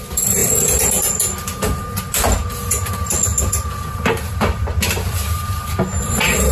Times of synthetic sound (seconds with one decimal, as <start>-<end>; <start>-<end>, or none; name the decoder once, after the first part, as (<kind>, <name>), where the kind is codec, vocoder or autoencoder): 0.4-1.1 (vocoder, BigVGAN v2); 3.3-6.1